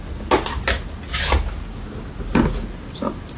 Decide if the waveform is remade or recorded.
recorded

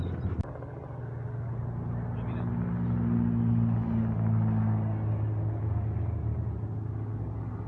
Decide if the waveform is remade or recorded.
recorded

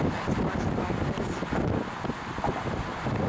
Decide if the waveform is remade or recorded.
recorded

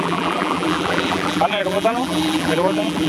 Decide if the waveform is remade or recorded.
remade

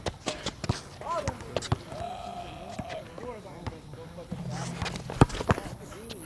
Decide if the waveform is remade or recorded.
recorded